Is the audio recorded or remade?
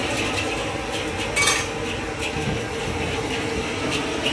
recorded